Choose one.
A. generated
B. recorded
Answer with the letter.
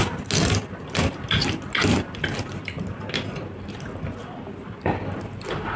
B